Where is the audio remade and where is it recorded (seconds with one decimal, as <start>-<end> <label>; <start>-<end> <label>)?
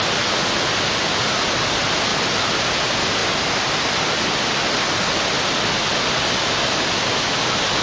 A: 0.0-7.8 recorded